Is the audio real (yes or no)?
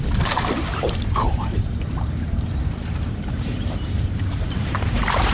no